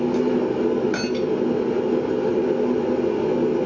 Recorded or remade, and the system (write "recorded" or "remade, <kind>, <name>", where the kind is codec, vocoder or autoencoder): recorded